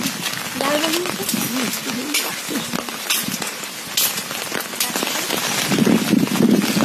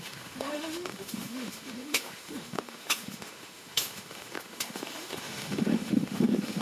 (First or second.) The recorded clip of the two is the first